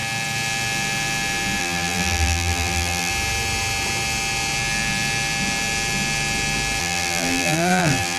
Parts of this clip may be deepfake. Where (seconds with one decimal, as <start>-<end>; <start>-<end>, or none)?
1.6-3.1; 6.8-8.2